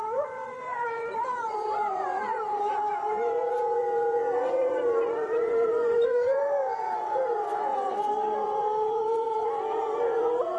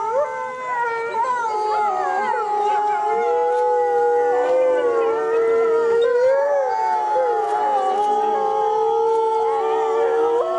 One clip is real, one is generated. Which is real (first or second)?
second